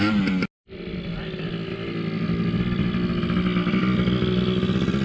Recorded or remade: recorded